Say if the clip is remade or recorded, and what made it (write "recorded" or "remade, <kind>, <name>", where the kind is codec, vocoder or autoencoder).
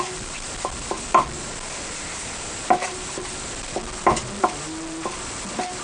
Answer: remade, vocoder, BigVGAN v2